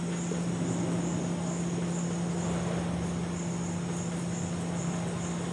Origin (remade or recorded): recorded